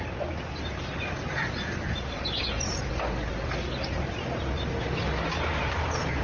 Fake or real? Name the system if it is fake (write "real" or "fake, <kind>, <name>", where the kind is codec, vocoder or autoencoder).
real